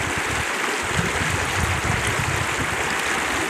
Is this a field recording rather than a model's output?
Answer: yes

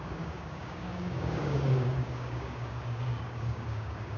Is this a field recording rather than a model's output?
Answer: no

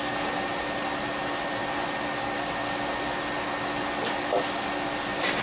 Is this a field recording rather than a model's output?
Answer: yes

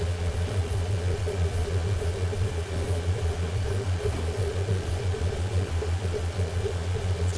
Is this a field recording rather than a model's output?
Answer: no